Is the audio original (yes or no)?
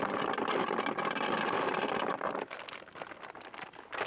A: yes